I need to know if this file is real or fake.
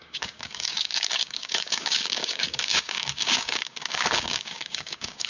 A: fake